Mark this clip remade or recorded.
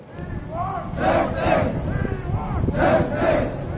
recorded